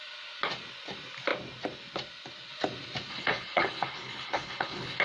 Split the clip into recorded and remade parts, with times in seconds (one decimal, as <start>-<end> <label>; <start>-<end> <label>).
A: 0.0-3.1 recorded; 3.1-5.0 remade